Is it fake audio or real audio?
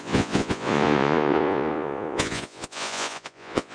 fake